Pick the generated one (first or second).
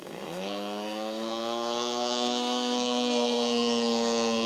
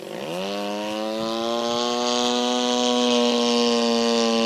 first